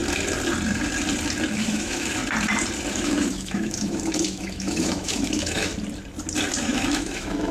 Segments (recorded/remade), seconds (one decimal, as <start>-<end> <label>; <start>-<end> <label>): 0.0-1.6 recorded; 1.6-2.2 remade; 2.2-2.9 recorded; 2.9-5.7 remade; 5.7-6.6 recorded; 6.6-7.5 remade